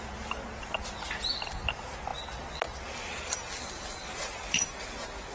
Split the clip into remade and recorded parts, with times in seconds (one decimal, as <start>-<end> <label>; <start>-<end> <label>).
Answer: 0.0-5.3 recorded